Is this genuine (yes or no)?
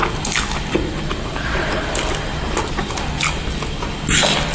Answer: yes